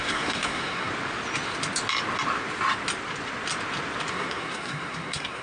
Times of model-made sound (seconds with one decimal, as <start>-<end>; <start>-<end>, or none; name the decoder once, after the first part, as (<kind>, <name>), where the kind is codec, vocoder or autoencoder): 0.0-0.9 (codec, SNAC); 4.1-5.4